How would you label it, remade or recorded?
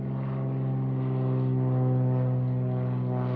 recorded